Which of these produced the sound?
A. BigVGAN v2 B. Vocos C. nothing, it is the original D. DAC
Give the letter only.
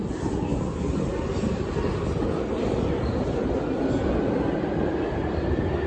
A